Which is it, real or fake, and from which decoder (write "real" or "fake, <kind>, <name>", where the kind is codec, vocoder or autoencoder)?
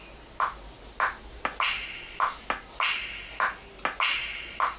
real